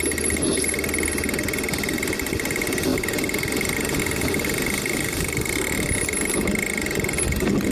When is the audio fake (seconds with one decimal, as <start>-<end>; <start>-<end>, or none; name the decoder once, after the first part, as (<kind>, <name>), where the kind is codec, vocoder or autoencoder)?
none